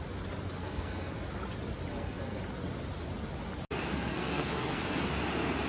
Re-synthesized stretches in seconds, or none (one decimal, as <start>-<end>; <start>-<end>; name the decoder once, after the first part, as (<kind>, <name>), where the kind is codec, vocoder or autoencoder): 0.6-1.1 (codec, SNAC); 1.9-2.4; 3.9-5.1